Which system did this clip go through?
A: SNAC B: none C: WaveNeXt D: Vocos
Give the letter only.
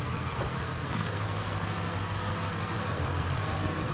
A